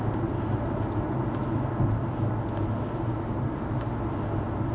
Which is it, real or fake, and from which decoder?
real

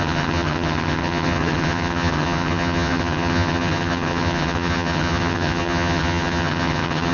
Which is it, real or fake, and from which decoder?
fake, vocoder, HiFi-GAN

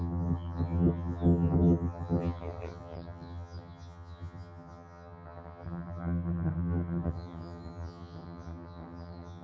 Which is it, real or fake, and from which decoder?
fake, vocoder, HiFi-GAN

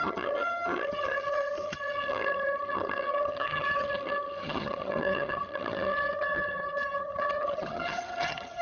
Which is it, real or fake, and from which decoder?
fake, vocoder, HiFi-GAN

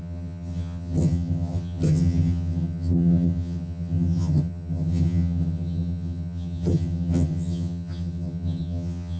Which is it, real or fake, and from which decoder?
fake, vocoder, HiFi-GAN